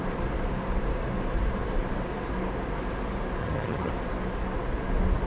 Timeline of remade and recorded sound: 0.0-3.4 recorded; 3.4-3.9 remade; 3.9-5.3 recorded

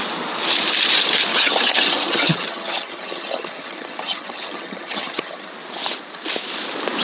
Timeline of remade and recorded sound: 0.0-1.3 recorded; 1.3-5.5 remade; 5.5-7.0 recorded

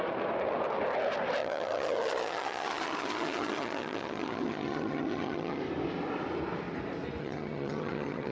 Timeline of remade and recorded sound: 0.0-1.4 recorded; 1.4-5.6 remade; 5.6-7.2 recorded; 7.2-8.3 remade

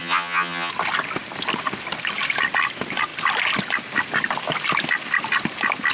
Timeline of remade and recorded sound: 0.0-0.7 remade; 0.7-5.9 recorded

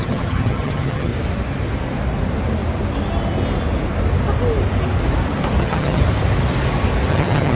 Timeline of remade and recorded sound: 0.0-1.1 remade; 1.1-5.6 recorded; 5.6-6.0 remade; 6.0-7.1 recorded; 7.1-7.5 remade

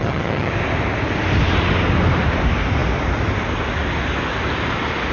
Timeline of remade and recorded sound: 0.0-0.5 remade; 0.5-5.1 recorded